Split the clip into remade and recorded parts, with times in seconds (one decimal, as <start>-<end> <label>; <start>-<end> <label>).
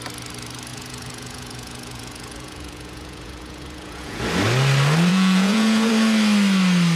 0.0-0.7 recorded; 0.7-4.2 remade; 4.2-5.1 recorded; 5.1-5.9 remade; 5.9-7.0 recorded